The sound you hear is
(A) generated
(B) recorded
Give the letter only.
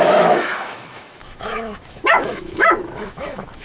A